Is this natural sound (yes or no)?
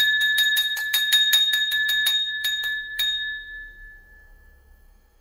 no